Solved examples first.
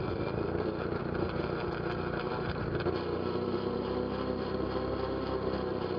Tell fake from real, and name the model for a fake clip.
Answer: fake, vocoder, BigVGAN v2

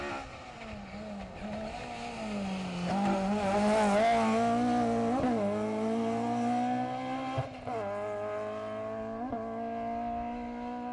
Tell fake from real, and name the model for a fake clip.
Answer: real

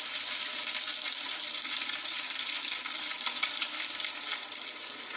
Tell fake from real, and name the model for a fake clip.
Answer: fake, vocoder, BigVGAN v2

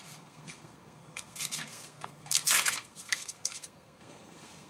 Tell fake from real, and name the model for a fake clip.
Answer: fake, codec, SNAC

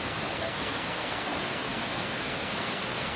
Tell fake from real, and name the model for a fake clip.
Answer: fake, codec, SNAC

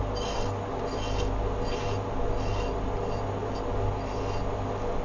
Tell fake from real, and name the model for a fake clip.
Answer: real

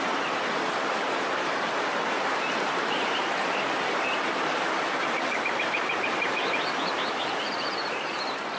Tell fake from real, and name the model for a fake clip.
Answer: fake, vocoder, BigVGAN v2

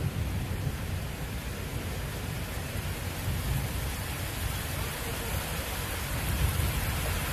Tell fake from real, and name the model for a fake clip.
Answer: real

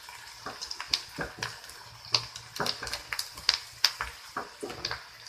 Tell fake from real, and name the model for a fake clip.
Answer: real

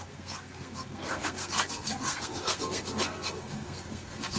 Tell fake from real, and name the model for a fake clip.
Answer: fake, codec, SNAC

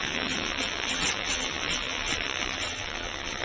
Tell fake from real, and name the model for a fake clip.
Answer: fake, vocoder, WaveNeXt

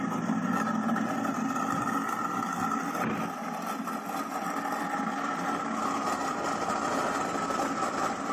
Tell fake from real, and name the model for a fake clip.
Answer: real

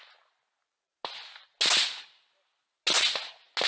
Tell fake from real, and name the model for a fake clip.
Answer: real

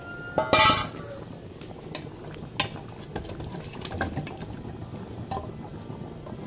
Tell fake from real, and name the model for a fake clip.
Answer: real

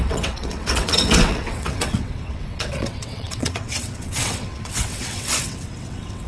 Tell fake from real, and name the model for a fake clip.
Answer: fake, vocoder, WaveNeXt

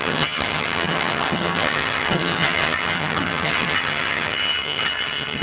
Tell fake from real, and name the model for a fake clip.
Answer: fake, vocoder, HiFi-GAN